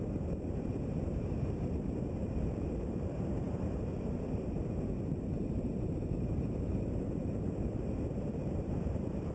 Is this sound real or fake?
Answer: fake